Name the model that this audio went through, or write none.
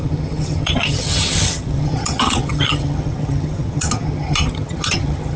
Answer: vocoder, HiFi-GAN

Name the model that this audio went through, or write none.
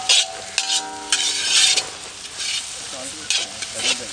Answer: none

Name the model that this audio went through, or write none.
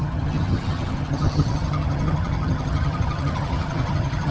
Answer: vocoder, HiFi-GAN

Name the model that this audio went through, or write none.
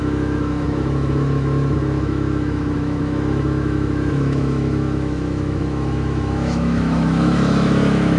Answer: autoencoder, DAC-VAE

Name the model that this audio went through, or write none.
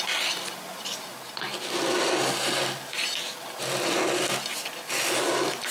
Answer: none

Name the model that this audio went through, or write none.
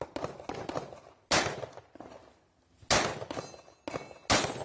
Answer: none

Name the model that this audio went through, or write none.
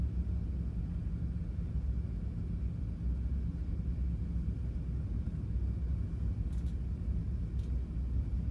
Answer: none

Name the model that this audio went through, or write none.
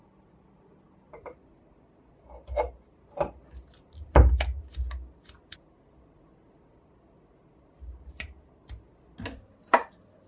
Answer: none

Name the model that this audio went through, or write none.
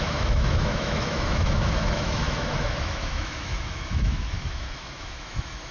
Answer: autoencoder, DAC-VAE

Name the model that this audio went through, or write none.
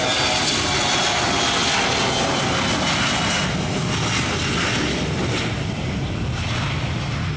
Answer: none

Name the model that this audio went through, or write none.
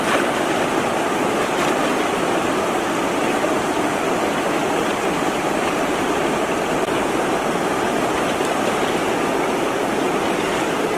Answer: none